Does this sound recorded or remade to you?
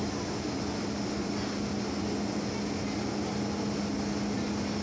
recorded